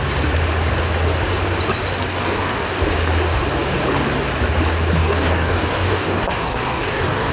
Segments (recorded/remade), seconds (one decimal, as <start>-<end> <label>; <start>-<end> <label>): 0.0-2.1 recorded; 2.1-2.8 remade; 2.8-5.0 recorded; 5.0-7.3 remade